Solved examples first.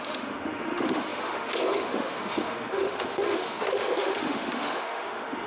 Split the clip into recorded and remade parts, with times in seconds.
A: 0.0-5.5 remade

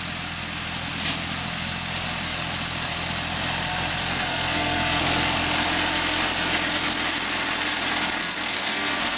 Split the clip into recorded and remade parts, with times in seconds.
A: 0.0-4.0 recorded; 4.0-5.0 remade; 5.0-8.2 recorded; 8.2-9.2 remade

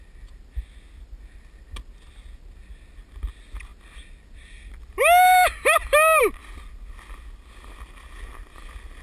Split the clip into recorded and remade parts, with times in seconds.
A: 0.0-9.0 recorded

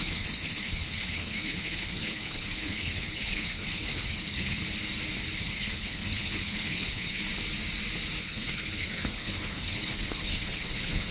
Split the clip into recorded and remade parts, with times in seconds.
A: 0.0-4.6 remade; 4.6-5.4 recorded; 5.4-7.2 remade; 7.2-8.2 recorded; 8.2-11.1 remade

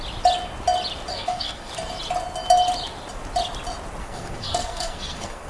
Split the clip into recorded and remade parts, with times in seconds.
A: 0.0-1.1 recorded; 1.1-1.7 remade; 1.7-4.0 recorded; 4.0-5.5 remade